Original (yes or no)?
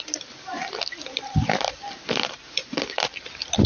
yes